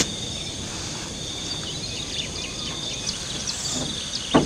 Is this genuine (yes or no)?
yes